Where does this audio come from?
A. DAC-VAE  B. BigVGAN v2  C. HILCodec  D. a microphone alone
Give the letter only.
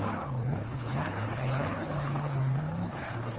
C